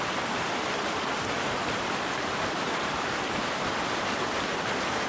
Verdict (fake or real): fake